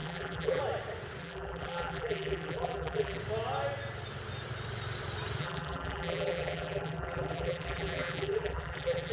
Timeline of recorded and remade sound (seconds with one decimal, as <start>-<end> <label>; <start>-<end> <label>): 0.0-0.6 remade; 0.6-1.2 recorded; 1.2-3.2 remade; 3.2-5.4 recorded; 5.4-9.1 remade